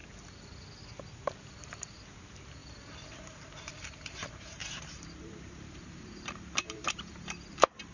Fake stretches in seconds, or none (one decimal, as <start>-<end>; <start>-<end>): 1.6-2.6; 3.1-7.9